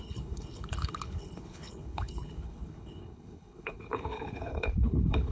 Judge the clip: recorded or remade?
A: remade